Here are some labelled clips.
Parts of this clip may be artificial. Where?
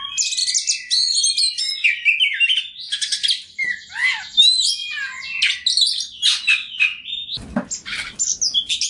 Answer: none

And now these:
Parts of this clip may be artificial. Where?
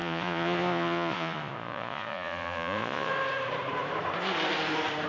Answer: 0.0-3.1 (vocoder, Vocos)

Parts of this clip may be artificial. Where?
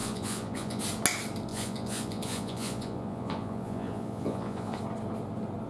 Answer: 0.0-0.8 (vocoder, Vocos); 1.5-4.8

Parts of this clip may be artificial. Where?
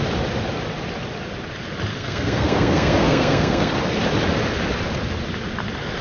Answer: 1.9-3.7 (codec, SNAC)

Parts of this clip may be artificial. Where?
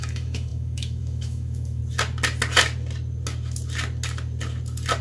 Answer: 0.0-1.8 (autoencoder, DAC-VAE)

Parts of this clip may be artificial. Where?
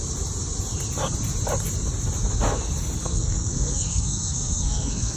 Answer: 3.0-5.2 (codec, SNAC)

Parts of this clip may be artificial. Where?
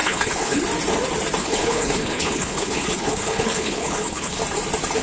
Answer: 0.0-0.6 (codec, HILCodec); 1.4-4.4